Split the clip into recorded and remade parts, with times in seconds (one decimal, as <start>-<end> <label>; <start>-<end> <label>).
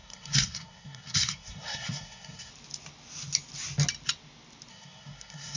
0.0-2.5 remade; 2.5-4.7 recorded; 4.7-5.6 remade